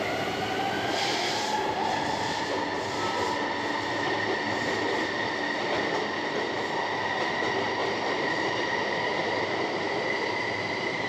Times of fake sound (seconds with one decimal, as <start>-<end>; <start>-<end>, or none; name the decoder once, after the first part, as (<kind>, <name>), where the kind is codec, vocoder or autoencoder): 7.8-11.1 (vocoder, BigVGAN v2)